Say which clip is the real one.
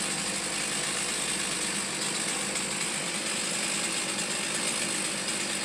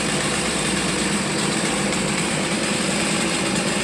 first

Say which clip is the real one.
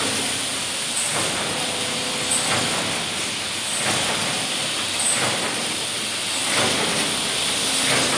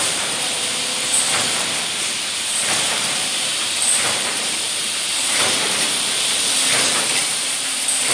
first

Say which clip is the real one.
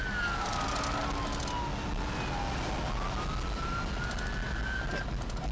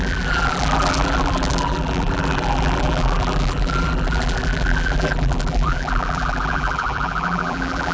first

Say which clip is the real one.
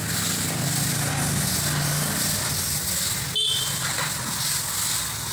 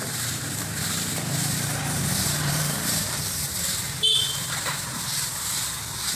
first